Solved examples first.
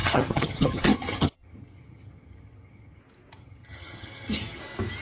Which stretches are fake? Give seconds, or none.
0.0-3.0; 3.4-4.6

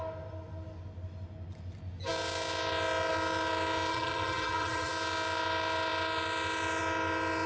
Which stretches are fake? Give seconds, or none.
3.9-4.9

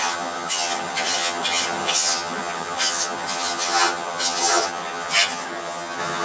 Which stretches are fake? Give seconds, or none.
0.0-6.2

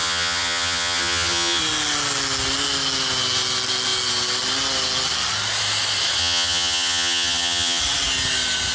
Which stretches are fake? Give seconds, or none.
0.0-1.6; 6.2-7.8

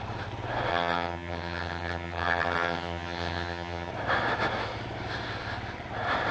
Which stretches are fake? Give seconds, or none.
0.7-3.9